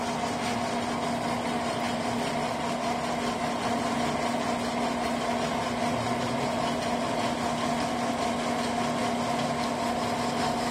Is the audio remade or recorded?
recorded